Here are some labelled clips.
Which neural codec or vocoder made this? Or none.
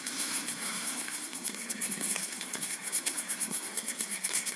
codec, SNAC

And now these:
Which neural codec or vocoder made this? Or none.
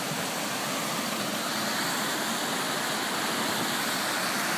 none